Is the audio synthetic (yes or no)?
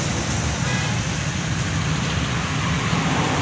no